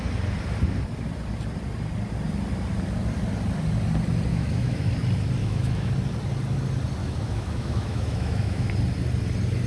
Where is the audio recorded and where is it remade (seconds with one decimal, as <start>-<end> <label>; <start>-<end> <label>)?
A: 0.0-4.3 recorded; 4.3-4.9 remade; 4.9-5.4 recorded; 5.4-5.9 remade; 5.9-7.0 recorded; 7.0-8.7 remade; 8.7-9.7 recorded